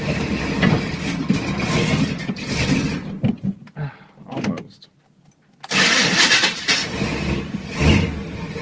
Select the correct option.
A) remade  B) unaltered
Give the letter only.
B